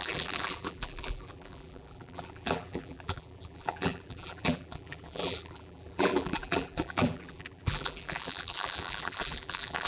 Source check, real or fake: fake